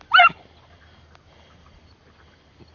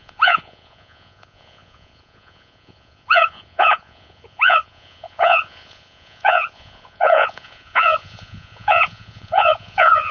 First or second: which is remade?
second